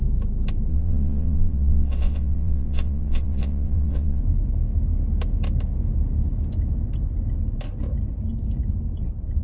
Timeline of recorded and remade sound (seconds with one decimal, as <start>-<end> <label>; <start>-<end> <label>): 0.0-0.7 recorded; 0.7-4.2 remade; 4.2-9.4 recorded